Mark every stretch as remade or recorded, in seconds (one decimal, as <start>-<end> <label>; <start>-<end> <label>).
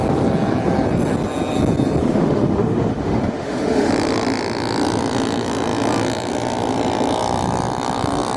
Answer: 0.0-2.0 recorded; 2.0-3.9 remade; 3.9-8.4 recorded